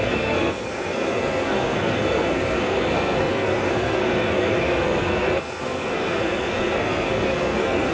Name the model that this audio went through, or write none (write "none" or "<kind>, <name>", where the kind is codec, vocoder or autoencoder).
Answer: codec, SNAC